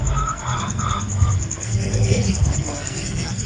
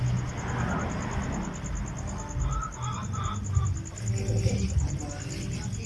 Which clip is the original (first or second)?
second